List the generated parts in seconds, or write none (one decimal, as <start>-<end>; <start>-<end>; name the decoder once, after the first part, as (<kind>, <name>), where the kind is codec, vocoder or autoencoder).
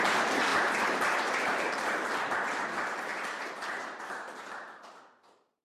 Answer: none